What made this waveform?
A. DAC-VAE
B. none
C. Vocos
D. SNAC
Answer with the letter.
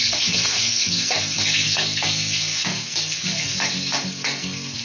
D